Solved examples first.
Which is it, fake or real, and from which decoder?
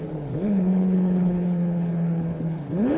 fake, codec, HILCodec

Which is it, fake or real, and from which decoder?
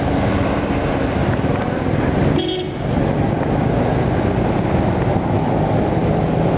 real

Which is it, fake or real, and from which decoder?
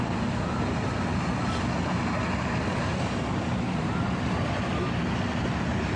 real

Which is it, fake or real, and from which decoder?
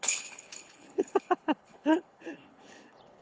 fake, codec, HILCodec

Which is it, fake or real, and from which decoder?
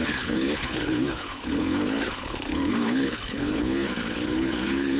fake, codec, HILCodec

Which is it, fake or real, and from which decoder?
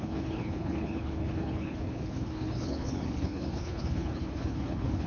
fake, codec, HILCodec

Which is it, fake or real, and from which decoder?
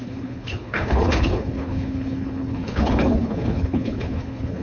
fake, codec, HILCodec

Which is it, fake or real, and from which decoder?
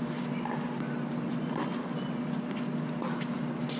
real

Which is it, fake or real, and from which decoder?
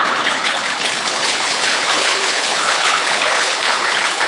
fake, codec, HILCodec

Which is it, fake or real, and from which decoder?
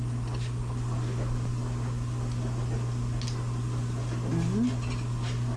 real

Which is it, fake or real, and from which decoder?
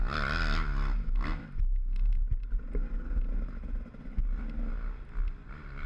real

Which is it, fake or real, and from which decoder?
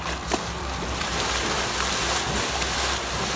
real